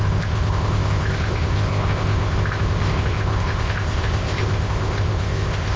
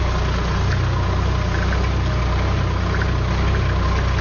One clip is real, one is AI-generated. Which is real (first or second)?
second